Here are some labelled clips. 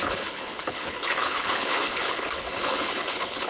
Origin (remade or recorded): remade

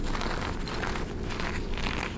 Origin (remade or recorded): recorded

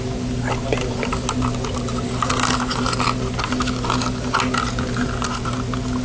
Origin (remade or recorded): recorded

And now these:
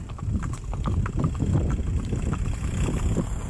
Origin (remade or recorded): recorded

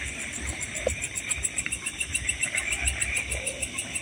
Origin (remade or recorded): remade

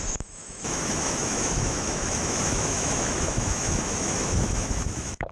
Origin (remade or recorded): remade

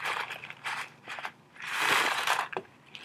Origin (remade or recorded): remade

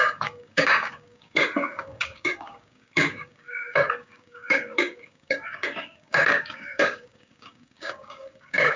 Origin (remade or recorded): remade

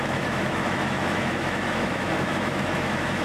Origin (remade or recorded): remade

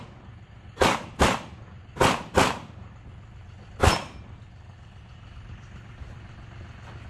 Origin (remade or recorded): recorded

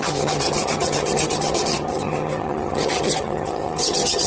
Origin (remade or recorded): remade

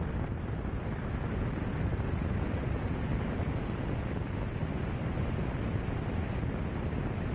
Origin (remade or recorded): recorded